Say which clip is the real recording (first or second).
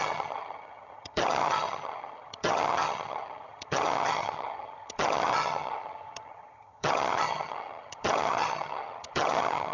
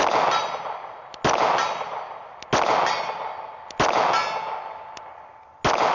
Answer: second